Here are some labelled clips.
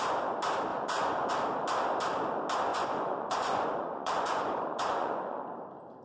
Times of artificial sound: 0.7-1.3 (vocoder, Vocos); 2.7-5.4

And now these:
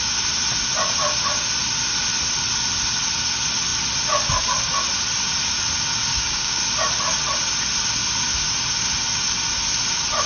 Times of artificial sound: 6.1-6.6 (codec, DAC)

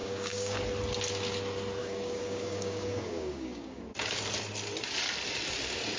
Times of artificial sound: 0.0-0.6 (codec, DAC); 1.8-3.9

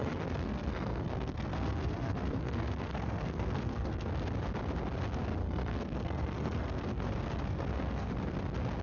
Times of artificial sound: 0.0-4.1 (codec, SNAC); 5.4-8.1

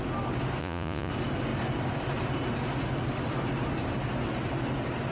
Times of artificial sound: 0.6-1.1 (vocoder, Vocos)

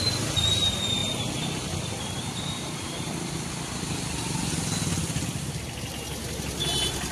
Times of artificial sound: 1.0-4.5 (vocoder, BigVGAN v2)

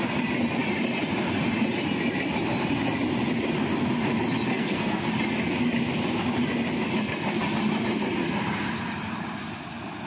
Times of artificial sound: 4.5-5.1 (codec, SNAC)